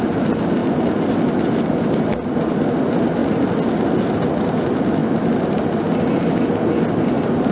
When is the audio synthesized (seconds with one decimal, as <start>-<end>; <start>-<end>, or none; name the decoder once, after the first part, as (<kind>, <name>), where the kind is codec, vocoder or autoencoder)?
none